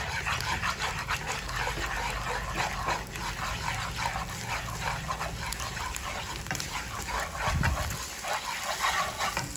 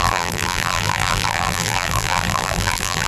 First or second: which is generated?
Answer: second